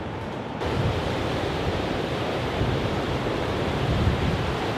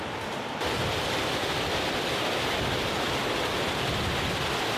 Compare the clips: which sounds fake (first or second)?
first